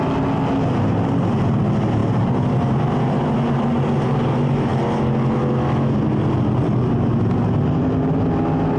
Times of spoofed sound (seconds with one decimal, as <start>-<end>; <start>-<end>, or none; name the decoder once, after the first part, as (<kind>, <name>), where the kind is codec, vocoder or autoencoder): none